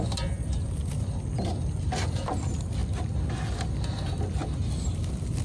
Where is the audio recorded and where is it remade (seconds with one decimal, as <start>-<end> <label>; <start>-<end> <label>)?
0.0-5.4 recorded